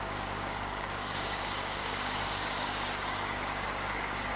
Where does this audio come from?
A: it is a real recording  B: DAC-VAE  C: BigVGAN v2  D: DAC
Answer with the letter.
D